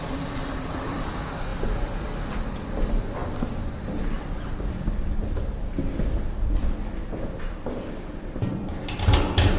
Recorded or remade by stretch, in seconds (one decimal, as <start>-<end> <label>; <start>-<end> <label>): 0.0-9.6 recorded